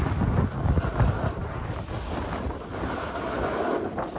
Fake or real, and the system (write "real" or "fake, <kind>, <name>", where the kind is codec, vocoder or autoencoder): real